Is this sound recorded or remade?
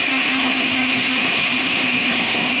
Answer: remade